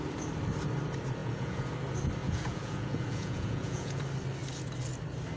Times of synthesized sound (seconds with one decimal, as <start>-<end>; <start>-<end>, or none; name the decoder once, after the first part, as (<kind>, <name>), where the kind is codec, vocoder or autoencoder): 1.2-1.7 (vocoder, Vocos); 2.2-4.0